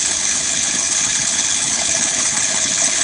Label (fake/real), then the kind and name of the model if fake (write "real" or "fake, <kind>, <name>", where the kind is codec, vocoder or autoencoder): fake, codec, HILCodec